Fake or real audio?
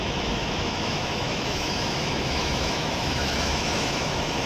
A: fake